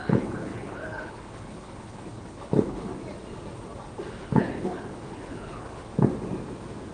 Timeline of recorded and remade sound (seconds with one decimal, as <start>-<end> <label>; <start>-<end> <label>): 0.0-2.9 remade; 2.9-4.2 recorded; 4.2-5.9 remade; 5.9-6.9 recorded